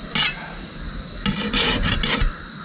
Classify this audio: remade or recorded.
recorded